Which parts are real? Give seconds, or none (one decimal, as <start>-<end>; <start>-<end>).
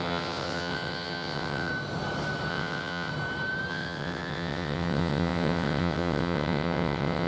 1.7-2.5; 3.1-3.7